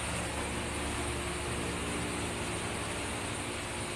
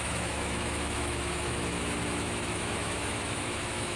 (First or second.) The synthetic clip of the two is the second